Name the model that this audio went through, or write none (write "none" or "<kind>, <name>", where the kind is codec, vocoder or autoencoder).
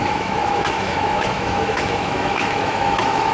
autoencoder, DAC-VAE